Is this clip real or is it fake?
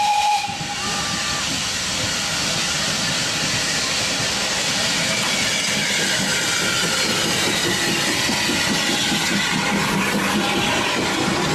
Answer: real